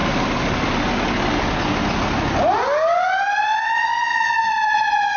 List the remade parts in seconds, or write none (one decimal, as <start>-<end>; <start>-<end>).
3.5-5.2